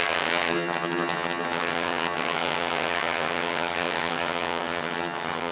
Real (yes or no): no